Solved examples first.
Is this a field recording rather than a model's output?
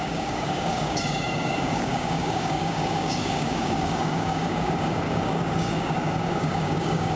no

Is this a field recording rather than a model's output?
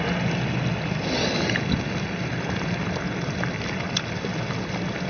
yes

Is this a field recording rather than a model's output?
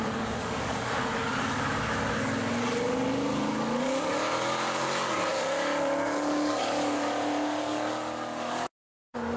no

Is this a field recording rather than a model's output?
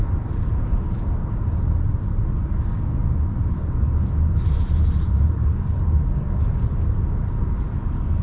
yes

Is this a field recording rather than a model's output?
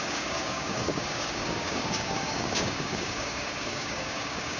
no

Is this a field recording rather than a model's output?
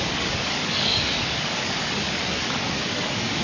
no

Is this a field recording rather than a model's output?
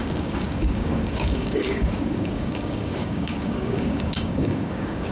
no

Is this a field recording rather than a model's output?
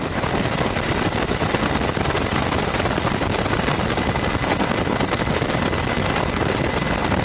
yes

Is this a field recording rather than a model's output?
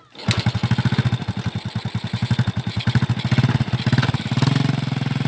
yes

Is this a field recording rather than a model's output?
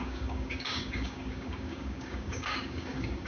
no